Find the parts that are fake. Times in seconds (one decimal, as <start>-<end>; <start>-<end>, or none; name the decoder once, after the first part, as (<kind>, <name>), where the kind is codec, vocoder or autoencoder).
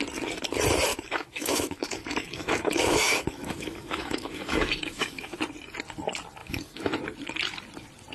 0.9-5.4 (autoencoder, DAC-VAE); 6.4-6.9